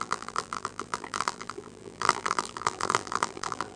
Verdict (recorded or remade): remade